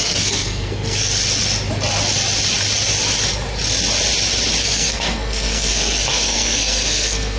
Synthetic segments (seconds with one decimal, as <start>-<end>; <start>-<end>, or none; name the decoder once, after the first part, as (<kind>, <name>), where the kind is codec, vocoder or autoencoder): 0.0-1.0 (codec, SNAC); 4.6-7.4